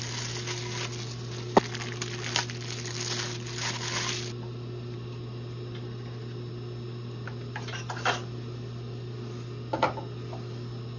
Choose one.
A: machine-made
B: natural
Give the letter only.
B